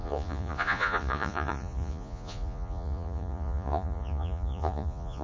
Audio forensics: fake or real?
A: fake